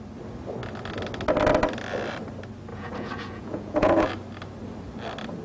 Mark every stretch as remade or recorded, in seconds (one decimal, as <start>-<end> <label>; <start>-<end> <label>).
0.0-2.7 recorded; 2.7-4.1 remade; 4.1-5.4 recorded